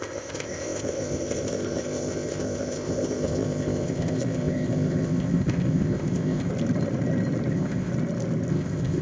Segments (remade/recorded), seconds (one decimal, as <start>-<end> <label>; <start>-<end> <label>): 0.0-6.5 remade; 6.5-7.5 recorded; 7.5-7.9 remade; 7.9-8.5 recorded; 8.5-9.0 remade